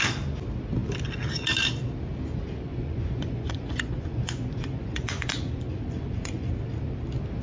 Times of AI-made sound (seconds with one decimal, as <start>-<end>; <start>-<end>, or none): 2.7-6.5